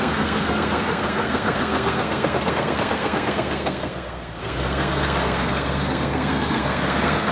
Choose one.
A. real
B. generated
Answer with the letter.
B